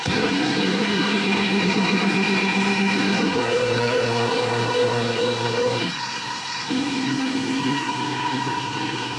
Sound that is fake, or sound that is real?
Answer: fake